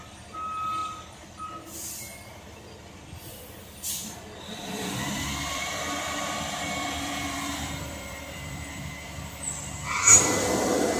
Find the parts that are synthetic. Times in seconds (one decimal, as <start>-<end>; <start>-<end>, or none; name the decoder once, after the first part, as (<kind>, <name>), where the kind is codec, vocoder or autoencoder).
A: 0.8-1.5 (vocoder, BigVGAN v2); 4.0-9.2